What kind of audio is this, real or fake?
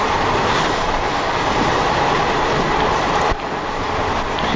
real